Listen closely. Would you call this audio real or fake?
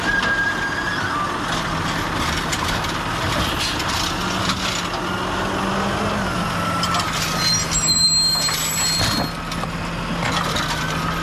real